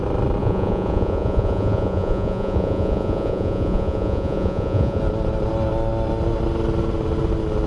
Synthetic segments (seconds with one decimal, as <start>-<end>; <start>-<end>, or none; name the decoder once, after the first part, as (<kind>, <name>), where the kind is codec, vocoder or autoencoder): 0.4-5.0 (vocoder, Vocos)